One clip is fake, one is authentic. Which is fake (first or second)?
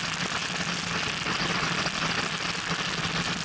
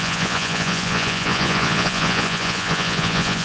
second